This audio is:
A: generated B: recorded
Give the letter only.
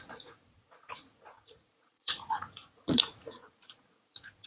A